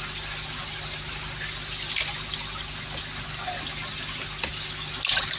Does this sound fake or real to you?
real